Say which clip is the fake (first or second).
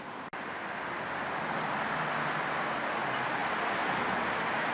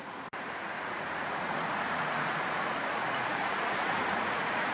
second